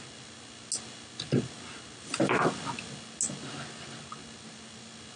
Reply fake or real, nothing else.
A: real